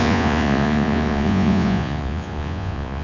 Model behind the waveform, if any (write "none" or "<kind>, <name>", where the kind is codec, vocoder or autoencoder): vocoder, Vocos